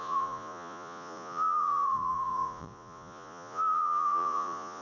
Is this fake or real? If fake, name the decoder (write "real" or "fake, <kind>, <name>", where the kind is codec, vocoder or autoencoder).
fake, vocoder, Vocos